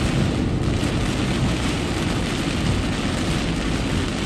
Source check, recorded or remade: recorded